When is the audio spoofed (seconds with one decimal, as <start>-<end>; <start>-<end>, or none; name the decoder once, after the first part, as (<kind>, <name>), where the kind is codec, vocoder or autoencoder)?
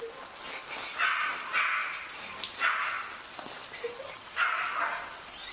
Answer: none